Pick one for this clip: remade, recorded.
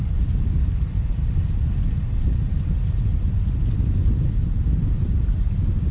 recorded